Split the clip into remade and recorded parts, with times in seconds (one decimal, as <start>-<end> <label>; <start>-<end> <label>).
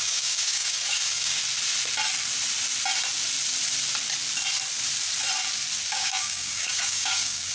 0.0-1.4 remade; 1.4-5.9 recorded; 5.9-7.5 remade